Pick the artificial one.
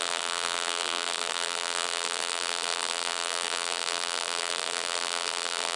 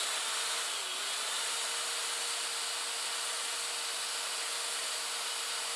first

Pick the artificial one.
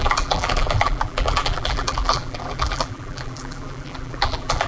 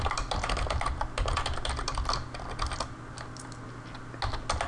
first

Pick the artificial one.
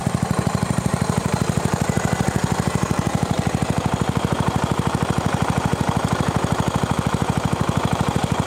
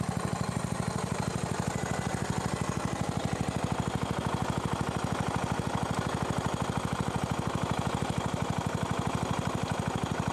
first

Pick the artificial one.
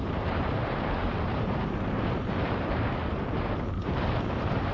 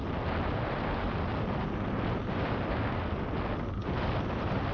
first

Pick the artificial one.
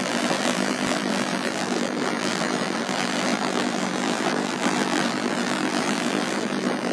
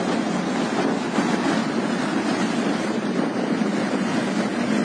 first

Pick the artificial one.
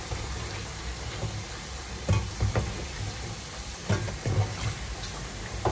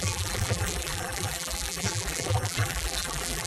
second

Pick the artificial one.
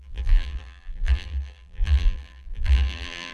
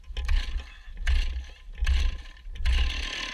first